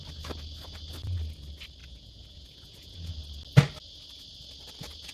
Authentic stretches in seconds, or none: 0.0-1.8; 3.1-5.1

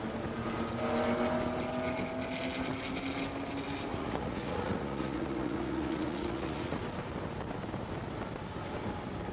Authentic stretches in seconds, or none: 0.0-3.9; 6.8-9.3

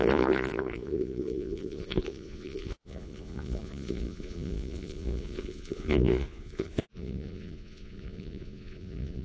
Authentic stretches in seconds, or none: none

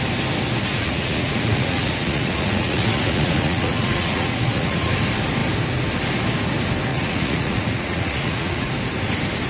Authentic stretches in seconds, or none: 0.0-0.7; 4.9-6.9; 8.7-9.5

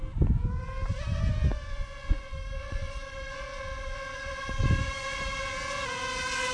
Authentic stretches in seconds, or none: 0.0-1.5; 5.4-6.5

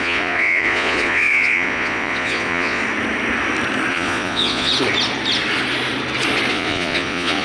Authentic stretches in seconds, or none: 2.8-3.9; 4.7-6.5

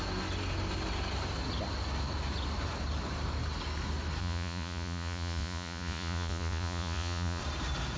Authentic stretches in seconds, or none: 0.0-4.2; 7.4-8.0